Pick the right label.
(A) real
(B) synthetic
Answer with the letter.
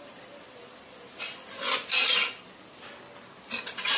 A